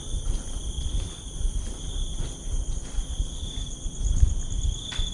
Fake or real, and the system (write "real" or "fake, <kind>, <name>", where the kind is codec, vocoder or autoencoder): real